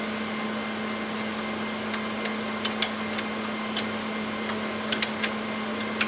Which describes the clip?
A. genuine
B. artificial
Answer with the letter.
A